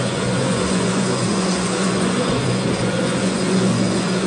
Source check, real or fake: fake